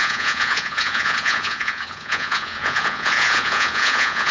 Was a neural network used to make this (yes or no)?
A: yes